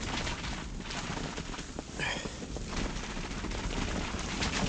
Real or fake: real